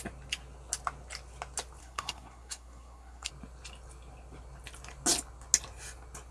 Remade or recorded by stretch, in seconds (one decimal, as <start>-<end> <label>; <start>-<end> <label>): 0.0-1.8 recorded; 1.8-3.3 remade; 3.3-6.3 recorded